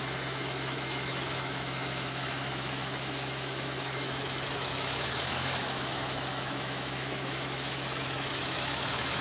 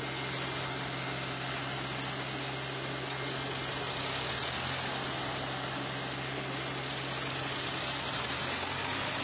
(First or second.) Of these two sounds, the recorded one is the second